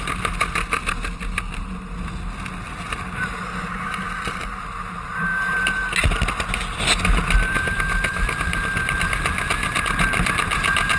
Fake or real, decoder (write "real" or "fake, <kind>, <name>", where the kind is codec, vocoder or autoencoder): real